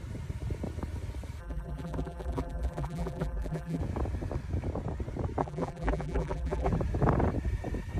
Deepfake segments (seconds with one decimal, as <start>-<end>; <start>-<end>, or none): 1.4-3.8; 5.4-6.7

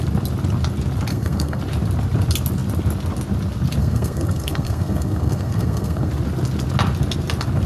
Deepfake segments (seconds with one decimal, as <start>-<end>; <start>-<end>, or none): 1.1-1.6; 3.8-6.1

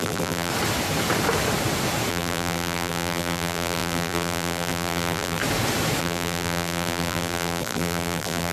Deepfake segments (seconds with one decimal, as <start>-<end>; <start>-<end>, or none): 0.0-0.5; 2.1-5.4; 6.0-8.5